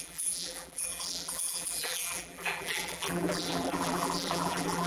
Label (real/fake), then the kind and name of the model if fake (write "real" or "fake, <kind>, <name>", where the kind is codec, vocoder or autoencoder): fake, vocoder, BigVGAN v2